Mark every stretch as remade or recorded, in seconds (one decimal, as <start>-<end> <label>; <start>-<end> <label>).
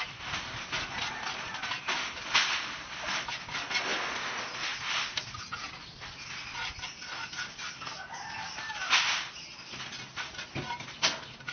0.0-11.5 recorded